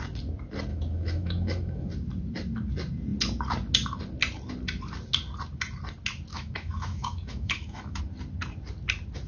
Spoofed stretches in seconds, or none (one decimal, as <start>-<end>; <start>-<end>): 0.7-1.9; 6.3-8.0

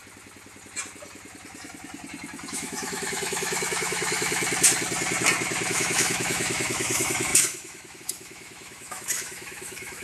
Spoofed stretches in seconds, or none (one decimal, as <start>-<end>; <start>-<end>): 2.5-4.4; 5.7-10.0

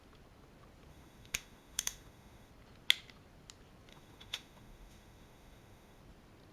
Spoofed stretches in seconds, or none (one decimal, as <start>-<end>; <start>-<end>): 0.9-2.5; 3.9-6.0